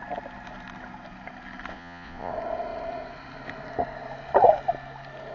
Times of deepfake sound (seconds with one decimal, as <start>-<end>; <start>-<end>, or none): 1.7-2.3